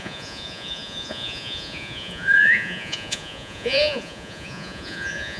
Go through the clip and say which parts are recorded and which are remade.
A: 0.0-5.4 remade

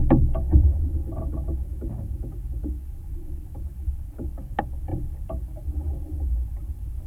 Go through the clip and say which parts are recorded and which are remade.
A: 0.0-4.9 recorded; 4.9-7.1 remade

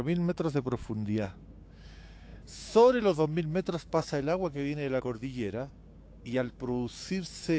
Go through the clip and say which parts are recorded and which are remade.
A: 0.0-7.6 remade

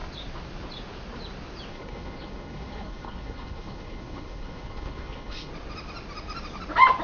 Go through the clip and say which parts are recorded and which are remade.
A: 0.0-1.7 recorded; 1.7-5.5 remade; 5.5-7.0 recorded

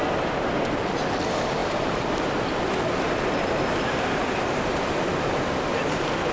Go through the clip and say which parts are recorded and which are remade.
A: 0.0-1.6 recorded; 1.6-5.4 remade; 5.4-6.3 recorded

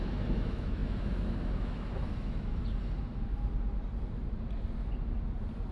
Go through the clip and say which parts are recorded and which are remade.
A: 0.0-2.6 remade; 2.6-5.7 recorded

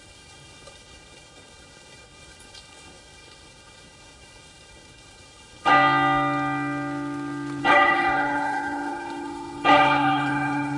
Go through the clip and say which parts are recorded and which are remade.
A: 0.0-5.7 remade; 5.7-7.6 recorded; 7.6-10.8 remade

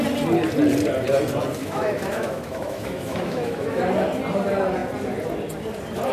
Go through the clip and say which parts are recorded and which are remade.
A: 0.0-1.6 recorded; 1.6-3.8 remade; 3.8-6.1 recorded